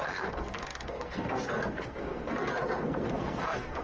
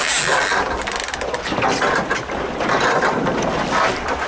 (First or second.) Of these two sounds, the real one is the second